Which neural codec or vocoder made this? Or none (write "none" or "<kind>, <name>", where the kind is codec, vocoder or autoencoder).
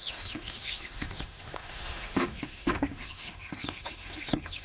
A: autoencoder, DAC-VAE